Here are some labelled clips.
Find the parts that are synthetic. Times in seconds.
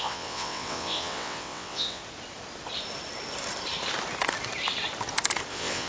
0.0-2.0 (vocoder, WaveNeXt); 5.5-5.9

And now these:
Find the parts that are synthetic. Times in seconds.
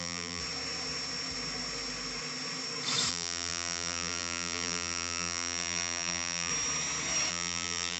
0.0-0.4 (vocoder, BigVGAN v2); 3.1-6.5; 7.3-8.0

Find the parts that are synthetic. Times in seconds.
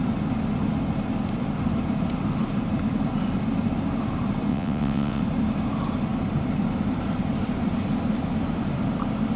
4.5-5.2 (vocoder, WaveNeXt)